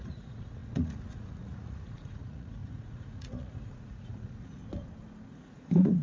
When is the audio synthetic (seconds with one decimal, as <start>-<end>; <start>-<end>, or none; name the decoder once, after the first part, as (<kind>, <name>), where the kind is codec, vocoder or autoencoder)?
0.0-4.6 (vocoder, Vocos); 5.3-6.0